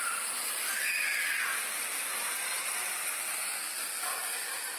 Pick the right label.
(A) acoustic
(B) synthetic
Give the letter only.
A